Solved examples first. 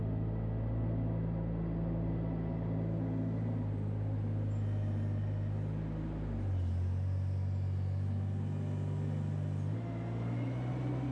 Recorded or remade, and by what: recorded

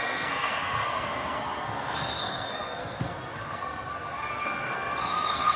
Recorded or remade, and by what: remade, codec, SNAC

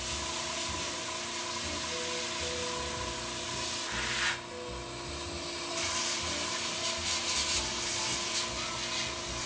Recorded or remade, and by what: recorded